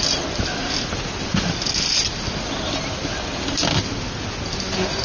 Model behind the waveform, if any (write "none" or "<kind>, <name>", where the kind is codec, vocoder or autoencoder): none